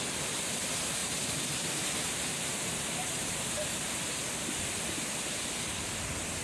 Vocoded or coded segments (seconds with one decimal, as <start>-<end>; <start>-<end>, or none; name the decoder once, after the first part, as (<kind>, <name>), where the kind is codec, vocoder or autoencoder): 1.0-3.7 (vocoder, BigVGAN v2)